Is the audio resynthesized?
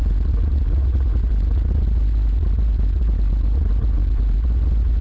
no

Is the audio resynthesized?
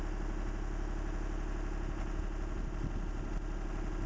no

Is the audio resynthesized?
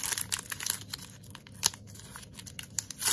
no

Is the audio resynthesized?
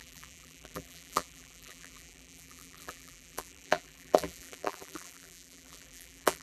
yes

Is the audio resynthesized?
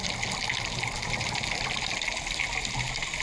no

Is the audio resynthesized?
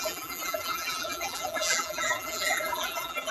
yes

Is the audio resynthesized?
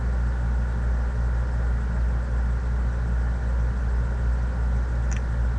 no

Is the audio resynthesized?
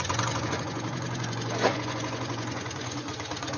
yes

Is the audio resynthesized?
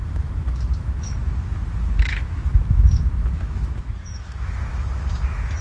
yes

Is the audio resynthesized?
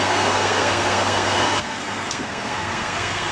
yes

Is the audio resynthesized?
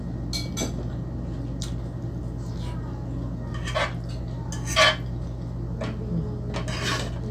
no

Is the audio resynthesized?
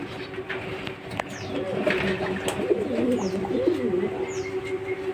no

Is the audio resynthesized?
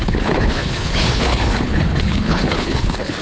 yes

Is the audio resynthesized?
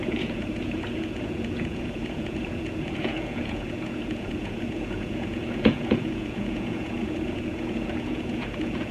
yes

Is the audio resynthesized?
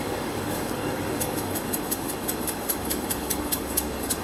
yes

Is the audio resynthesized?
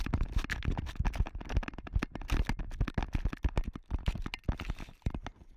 no